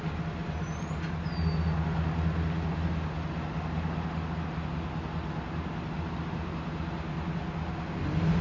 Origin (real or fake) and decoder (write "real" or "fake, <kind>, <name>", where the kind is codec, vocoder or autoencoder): real